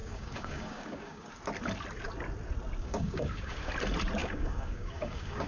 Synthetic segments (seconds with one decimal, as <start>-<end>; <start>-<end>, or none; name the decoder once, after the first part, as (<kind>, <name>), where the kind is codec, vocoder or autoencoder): 0.0-1.3 (codec, DAC); 2.8-3.7; 4.2-5.5